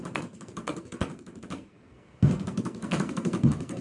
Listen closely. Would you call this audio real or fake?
fake